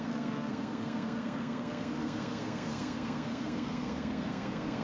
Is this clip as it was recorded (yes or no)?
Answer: no